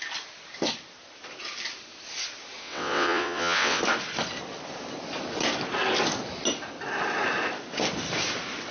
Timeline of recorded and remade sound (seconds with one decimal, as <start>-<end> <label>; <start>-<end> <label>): 0.0-2.6 recorded; 2.6-3.8 remade; 3.8-8.7 recorded